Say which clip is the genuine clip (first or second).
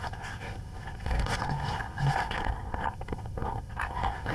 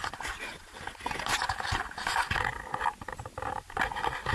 second